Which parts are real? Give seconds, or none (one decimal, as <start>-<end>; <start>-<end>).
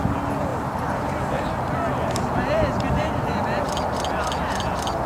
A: 0.0-0.5; 3.6-5.1